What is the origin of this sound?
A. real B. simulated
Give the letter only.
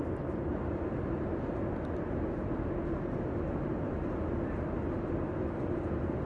A